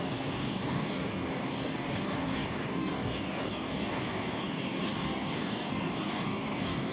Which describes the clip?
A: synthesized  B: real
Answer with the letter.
A